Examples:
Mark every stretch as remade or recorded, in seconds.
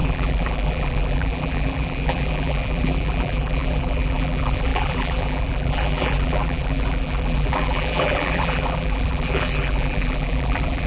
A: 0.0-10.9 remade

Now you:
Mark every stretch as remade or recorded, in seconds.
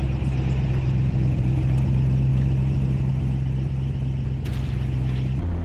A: 0.0-5.6 recorded